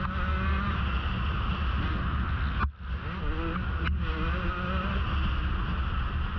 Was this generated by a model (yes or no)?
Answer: no